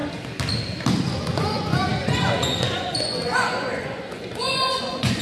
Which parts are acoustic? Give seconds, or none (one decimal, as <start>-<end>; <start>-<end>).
0.0-1.0